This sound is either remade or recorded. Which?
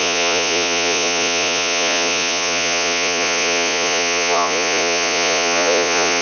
remade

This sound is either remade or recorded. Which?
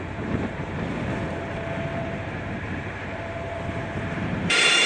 remade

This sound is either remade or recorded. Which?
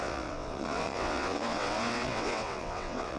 remade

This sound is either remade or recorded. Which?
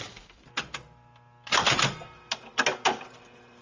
recorded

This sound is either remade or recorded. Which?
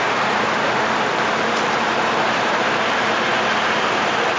recorded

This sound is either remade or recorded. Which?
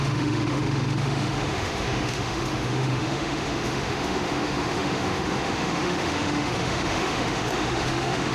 remade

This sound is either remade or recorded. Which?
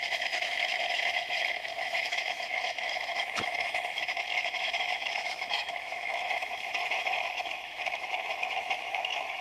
remade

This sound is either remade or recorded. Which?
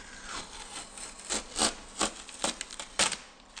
recorded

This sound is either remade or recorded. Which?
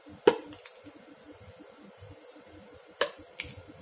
recorded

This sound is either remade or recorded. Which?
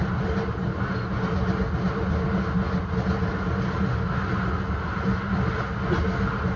recorded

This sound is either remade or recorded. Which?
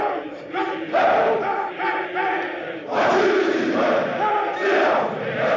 recorded